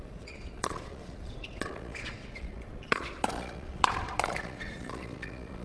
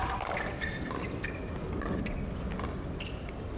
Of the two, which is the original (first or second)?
second